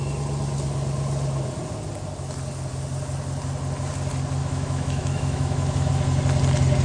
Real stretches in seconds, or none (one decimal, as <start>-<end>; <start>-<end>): 0.0-4.4; 5.9-6.8